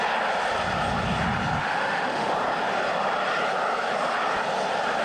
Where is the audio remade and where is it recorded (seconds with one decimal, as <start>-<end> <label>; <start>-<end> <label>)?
0.0-1.6 recorded; 1.6-2.3 remade; 2.3-5.0 recorded

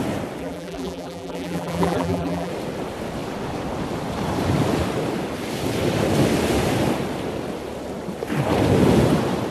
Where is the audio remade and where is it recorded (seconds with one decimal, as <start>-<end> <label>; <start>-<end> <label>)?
0.0-0.4 recorded; 0.4-2.5 remade; 2.5-9.5 recorded

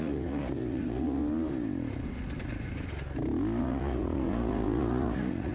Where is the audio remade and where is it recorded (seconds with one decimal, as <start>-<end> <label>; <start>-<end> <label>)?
0.0-1.2 remade; 1.2-3.6 recorded; 3.6-5.5 remade

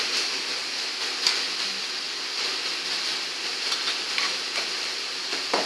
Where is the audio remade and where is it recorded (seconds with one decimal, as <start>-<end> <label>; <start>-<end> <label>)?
0.0-0.6 remade; 0.6-4.0 recorded; 4.0-5.7 remade

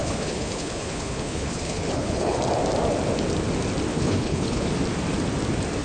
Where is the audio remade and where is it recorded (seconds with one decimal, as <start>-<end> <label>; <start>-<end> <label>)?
0.0-2.4 remade; 2.4-3.9 recorded; 3.9-4.7 remade; 4.7-5.8 recorded